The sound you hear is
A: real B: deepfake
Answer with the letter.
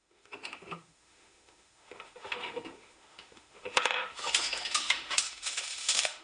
B